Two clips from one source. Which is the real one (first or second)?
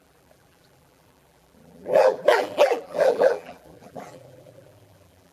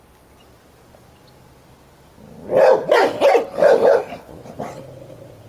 second